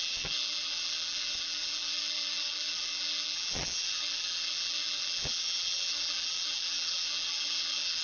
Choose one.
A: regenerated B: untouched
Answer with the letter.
A